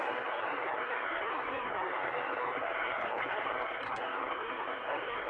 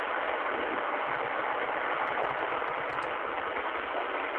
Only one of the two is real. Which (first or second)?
second